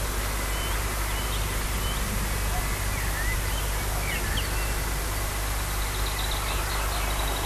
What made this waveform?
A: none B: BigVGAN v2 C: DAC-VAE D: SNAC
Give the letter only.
A